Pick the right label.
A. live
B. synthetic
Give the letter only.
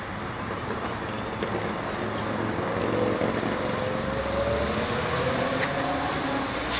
A